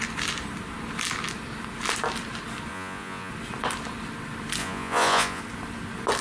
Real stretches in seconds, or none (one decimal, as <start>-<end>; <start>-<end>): 0.0-2.7; 3.3-4.6; 5.4-6.2